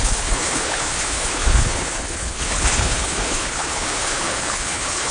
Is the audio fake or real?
fake